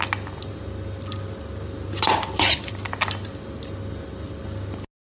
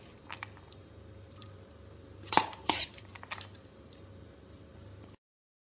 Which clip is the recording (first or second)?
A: first